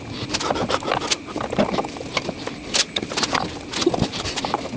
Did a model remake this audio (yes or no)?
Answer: no